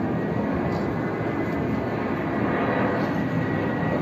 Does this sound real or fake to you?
real